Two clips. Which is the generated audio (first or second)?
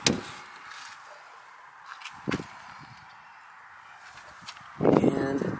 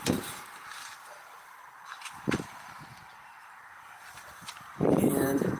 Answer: second